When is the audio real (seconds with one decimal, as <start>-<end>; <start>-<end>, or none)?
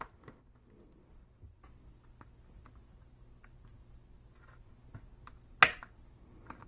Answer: 0.0-6.7